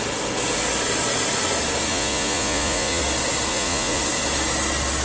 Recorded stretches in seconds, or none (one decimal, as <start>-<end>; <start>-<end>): 0.0-1.9; 3.0-3.5; 4.0-5.0